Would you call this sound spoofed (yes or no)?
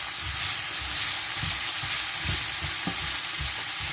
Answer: no